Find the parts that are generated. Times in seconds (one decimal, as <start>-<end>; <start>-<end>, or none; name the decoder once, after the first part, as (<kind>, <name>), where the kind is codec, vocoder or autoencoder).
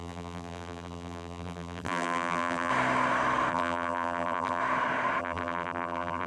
0.0-2.7 (vocoder, BigVGAN v2); 3.5-4.6; 5.2-6.3